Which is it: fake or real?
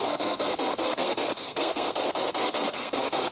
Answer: fake